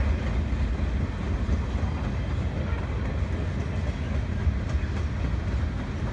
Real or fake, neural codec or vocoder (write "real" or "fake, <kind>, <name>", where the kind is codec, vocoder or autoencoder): real